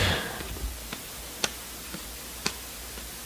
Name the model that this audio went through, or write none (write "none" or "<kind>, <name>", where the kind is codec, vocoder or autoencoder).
none